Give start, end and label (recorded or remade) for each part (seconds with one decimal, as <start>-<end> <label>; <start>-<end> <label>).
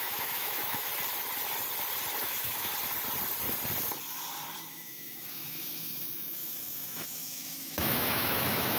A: 0.0-0.9 remade; 0.9-2.2 recorded; 2.2-2.7 remade; 2.7-4.7 recorded; 4.7-8.8 remade